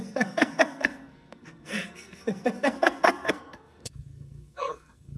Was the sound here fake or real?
fake